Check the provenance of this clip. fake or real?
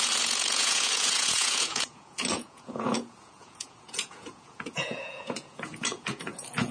fake